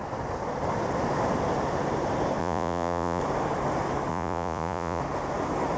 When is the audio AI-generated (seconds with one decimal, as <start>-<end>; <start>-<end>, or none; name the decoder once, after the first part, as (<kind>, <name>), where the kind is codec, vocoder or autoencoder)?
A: 2.4-3.2 (vocoder, Vocos); 4.1-5.0